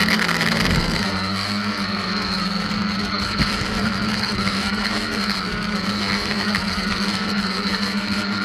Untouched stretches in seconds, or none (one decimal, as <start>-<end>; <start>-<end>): none